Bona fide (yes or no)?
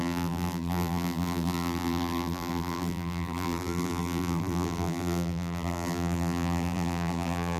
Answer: no